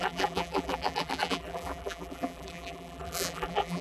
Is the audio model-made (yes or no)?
yes